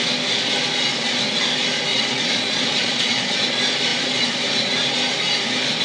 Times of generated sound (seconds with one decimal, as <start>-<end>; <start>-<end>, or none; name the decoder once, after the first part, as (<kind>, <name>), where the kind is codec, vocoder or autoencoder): 1.9-3.4 (vocoder, Vocos)